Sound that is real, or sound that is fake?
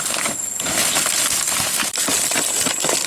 real